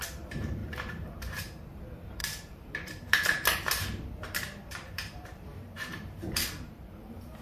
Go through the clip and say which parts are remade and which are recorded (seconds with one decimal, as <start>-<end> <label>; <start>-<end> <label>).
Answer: 0.0-7.4 remade